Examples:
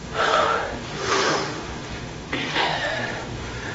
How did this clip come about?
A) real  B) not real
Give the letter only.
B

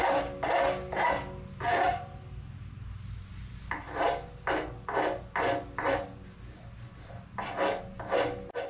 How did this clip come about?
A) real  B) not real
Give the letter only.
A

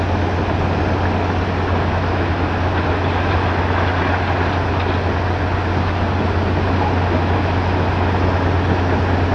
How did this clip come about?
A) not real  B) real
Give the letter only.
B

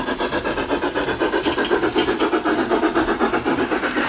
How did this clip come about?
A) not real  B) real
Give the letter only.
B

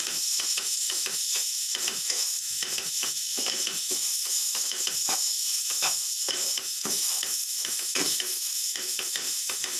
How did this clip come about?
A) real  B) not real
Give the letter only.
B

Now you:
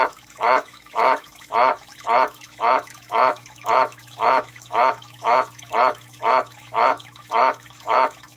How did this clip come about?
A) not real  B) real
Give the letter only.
A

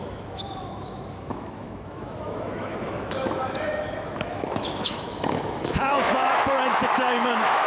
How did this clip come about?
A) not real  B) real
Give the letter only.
A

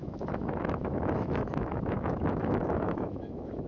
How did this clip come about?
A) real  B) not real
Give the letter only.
B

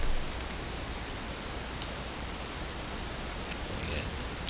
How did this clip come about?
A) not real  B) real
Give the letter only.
B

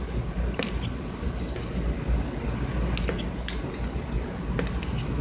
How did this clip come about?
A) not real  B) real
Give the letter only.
B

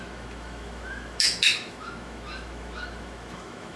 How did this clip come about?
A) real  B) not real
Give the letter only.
B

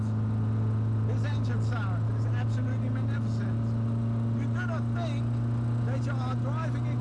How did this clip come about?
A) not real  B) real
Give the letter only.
B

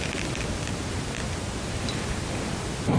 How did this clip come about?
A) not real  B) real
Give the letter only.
B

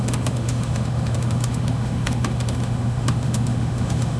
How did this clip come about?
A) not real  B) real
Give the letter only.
A